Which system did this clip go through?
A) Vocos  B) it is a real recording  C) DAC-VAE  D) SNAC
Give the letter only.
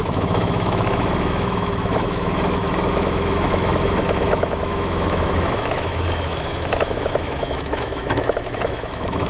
C